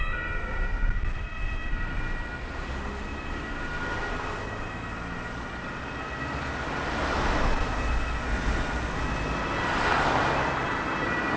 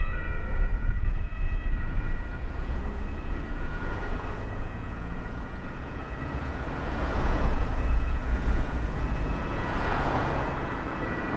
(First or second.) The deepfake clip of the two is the second